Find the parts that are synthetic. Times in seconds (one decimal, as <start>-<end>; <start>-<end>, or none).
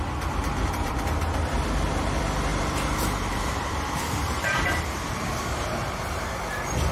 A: 0.6-1.5; 2.5-6.4